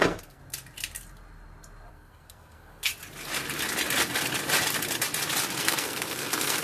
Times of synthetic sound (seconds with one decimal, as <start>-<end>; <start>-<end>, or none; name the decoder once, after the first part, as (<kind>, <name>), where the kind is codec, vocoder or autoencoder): 0.0-0.4 (codec, SNAC); 1.9-2.9; 5.6-6.6